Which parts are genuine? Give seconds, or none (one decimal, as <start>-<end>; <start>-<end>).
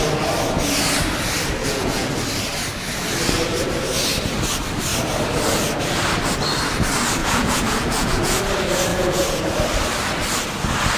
0.0-1.6; 2.1-7.2; 8.4-8.9; 9.4-11.0